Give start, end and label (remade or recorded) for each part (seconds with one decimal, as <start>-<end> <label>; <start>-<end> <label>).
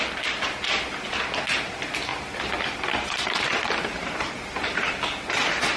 0.0-2.1 recorded; 2.1-5.8 remade